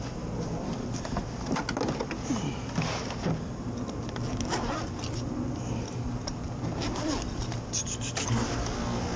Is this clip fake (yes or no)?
no